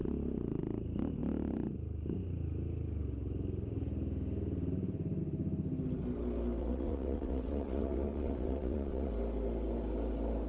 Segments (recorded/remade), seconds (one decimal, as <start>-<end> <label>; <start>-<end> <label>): 0.0-6.6 recorded; 6.6-9.1 remade; 9.1-10.5 recorded